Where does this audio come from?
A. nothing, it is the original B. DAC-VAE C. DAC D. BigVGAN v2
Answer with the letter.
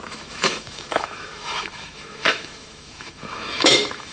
B